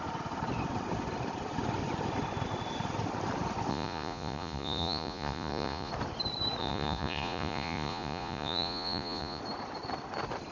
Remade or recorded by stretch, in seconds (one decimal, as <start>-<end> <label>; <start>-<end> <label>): 0.0-3.7 recorded; 3.7-5.9 remade; 5.9-6.6 recorded; 6.6-9.4 remade; 9.4-10.5 recorded

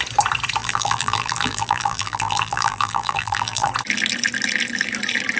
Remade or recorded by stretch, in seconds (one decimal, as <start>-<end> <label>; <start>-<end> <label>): 0.0-0.6 recorded; 0.6-3.7 remade; 3.7-5.4 recorded